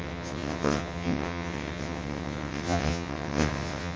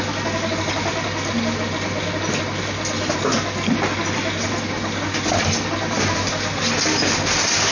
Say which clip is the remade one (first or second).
first